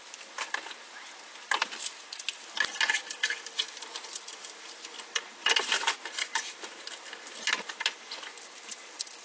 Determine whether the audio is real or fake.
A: real